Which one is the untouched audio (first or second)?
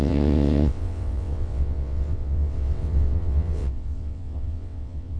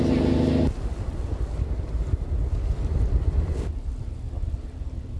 second